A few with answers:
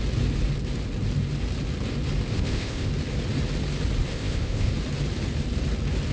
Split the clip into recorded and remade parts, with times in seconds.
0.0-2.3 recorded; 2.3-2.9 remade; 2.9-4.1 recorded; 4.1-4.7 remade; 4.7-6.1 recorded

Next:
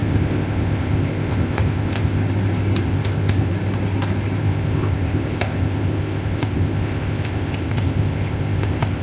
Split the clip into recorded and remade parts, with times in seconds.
0.0-2.2 remade; 2.2-2.8 recorded; 2.8-3.5 remade; 3.5-4.4 recorded; 4.4-9.0 remade

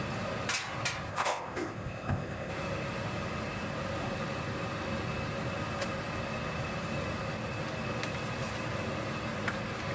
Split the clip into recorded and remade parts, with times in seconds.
0.0-1.1 recorded; 1.1-2.5 remade; 2.5-9.9 recorded

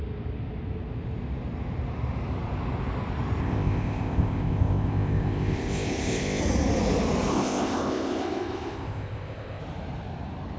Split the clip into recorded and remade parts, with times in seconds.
0.0-3.4 recorded; 3.4-6.4 remade; 6.4-7.3 recorded; 7.3-9.6 remade; 9.6-10.6 recorded

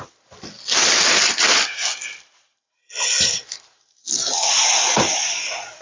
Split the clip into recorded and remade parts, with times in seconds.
0.0-5.8 recorded

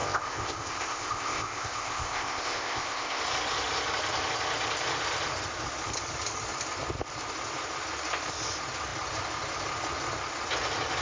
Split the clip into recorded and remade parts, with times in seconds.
0.0-3.2 remade; 3.2-11.0 recorded

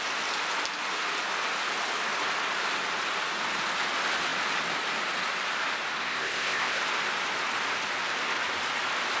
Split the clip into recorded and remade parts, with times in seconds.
0.0-6.0 recorded; 6.0-6.8 remade; 6.8-9.2 recorded